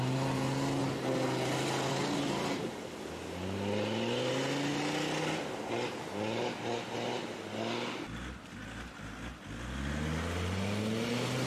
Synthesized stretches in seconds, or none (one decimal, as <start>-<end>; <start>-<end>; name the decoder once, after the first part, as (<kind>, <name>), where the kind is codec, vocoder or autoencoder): none